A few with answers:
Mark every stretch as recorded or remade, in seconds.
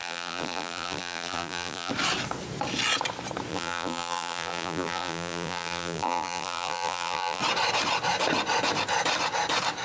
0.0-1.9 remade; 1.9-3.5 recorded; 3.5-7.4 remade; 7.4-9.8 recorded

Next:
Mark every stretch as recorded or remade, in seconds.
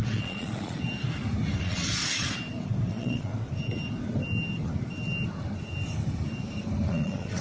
0.0-0.8 remade; 0.8-1.6 recorded; 1.6-2.0 remade; 2.0-2.9 recorded; 2.9-3.3 remade; 3.3-6.9 recorded; 6.9-7.4 remade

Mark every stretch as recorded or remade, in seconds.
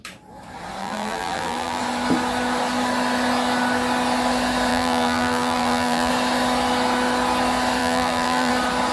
0.0-0.8 recorded; 0.8-1.8 remade; 1.8-4.7 recorded; 4.7-6.1 remade; 6.1-7.8 recorded; 7.8-8.5 remade; 8.5-8.9 recorded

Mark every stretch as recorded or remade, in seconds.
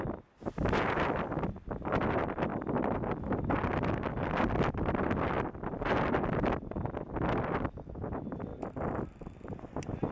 0.0-10.1 recorded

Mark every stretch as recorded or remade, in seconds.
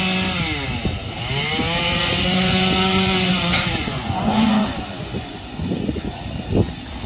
0.0-1.9 recorded; 1.9-6.2 remade; 6.2-7.1 recorded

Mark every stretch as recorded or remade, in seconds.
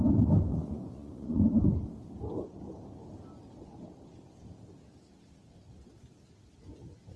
0.0-0.5 recorded; 0.5-1.5 remade; 1.5-7.2 recorded